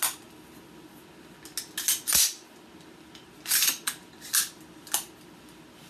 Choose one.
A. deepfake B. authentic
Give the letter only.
B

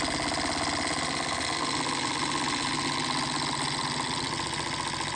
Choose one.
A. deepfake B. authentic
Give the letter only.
B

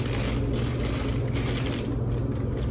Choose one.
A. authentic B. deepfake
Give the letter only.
A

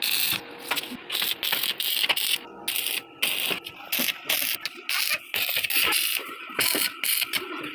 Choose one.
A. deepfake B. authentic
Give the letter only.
B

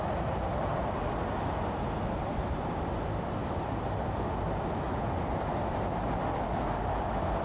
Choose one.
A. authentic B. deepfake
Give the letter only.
A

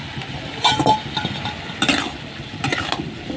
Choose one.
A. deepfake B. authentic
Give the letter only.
B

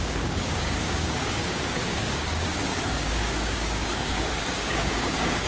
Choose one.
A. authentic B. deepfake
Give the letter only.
B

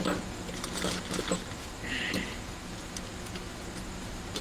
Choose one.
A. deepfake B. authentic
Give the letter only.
B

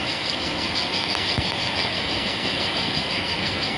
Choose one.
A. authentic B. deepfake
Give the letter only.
B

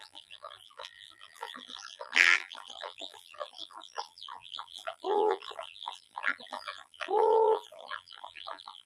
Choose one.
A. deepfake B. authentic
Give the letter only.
A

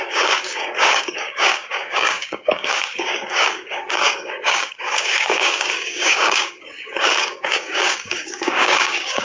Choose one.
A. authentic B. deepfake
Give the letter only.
B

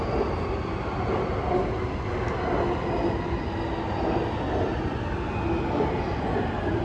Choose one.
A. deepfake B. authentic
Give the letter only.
B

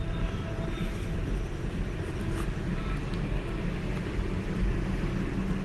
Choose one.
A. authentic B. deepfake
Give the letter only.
A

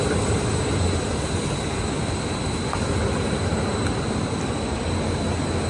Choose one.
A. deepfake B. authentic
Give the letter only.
B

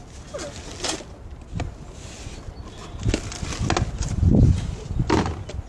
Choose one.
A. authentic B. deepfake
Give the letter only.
A